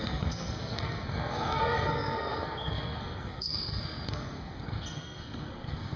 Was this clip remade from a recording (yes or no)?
yes